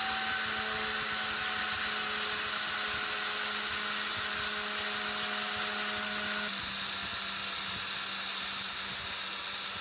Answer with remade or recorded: recorded